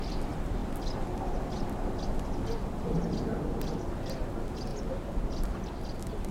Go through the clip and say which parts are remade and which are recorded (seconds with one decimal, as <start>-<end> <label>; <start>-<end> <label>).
0.0-4.7 remade; 4.7-6.3 recorded